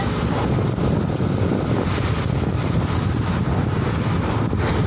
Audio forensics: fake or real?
real